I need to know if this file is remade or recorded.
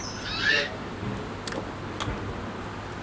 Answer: recorded